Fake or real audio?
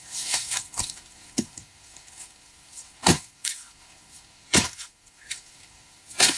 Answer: fake